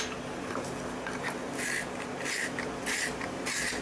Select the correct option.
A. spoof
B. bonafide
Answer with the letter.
B